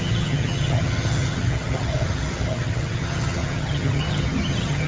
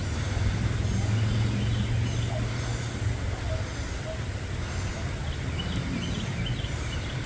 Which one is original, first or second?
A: second